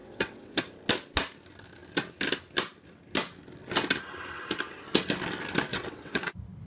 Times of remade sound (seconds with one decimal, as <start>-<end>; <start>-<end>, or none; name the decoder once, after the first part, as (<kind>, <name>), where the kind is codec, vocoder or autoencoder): 0.0-0.6 (vocoder, WaveNeXt); 5.7-6.3